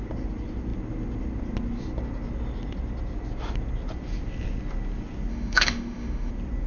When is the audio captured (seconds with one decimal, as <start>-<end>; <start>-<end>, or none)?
0.0-5.3; 6.3-6.7